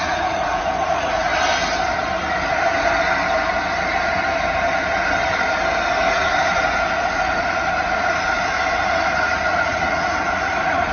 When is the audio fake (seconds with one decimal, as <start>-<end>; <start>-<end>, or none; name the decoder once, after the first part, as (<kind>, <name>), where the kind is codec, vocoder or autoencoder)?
0.0-1.3 (vocoder, Vocos); 6.1-10.9